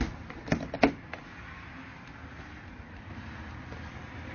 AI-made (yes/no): no